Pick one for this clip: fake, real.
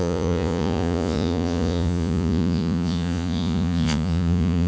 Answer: fake